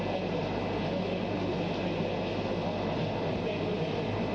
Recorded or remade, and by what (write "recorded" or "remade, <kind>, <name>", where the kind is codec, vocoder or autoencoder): recorded